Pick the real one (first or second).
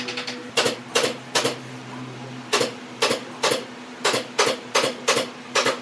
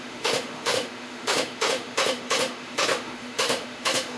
first